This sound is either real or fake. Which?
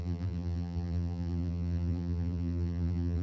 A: fake